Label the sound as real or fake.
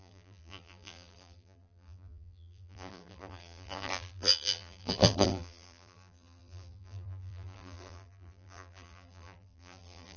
fake